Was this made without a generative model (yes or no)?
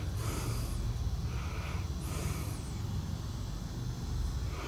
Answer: yes